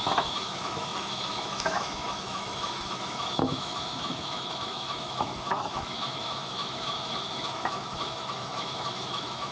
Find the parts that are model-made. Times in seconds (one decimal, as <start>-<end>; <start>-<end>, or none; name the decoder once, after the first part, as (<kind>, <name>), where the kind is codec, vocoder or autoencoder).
0.0-9.5 (autoencoder, DAC-VAE)

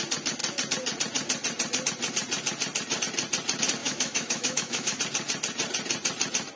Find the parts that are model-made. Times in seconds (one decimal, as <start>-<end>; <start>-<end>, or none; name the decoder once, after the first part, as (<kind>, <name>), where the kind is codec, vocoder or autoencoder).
3.8-5.0 (autoencoder, DAC-VAE)

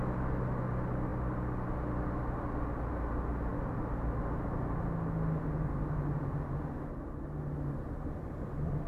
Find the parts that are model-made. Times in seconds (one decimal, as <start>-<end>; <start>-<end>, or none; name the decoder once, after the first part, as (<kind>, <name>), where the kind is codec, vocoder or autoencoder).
none

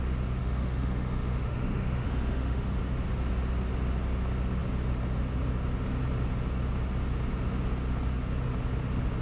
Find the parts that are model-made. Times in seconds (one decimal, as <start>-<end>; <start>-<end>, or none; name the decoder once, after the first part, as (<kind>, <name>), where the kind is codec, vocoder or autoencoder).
0.4-2.8 (autoencoder, DAC-VAE)